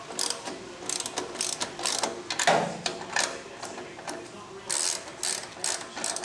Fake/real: real